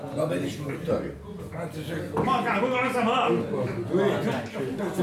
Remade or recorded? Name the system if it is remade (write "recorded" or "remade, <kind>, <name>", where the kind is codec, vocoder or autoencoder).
recorded